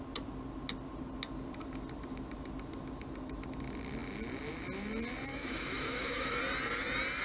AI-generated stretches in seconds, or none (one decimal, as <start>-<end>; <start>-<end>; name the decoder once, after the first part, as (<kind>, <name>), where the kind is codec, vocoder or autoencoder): 5.3-6.4 (autoencoder, DAC-VAE)